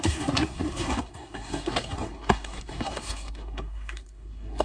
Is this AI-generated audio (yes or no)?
yes